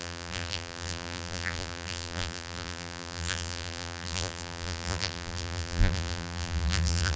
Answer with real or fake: fake